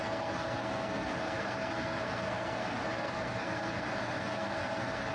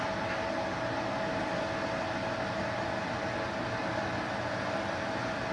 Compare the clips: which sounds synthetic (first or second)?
first